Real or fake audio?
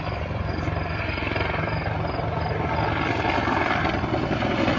real